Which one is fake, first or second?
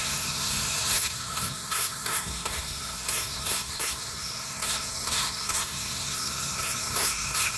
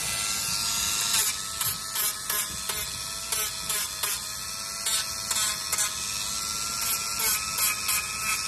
first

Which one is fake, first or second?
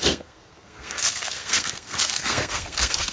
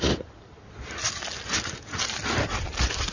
first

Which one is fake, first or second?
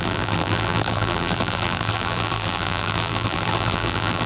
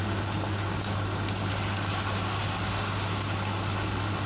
first